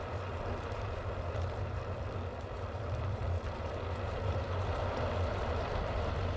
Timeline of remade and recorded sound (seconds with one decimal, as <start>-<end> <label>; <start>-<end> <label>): 0.0-6.4 remade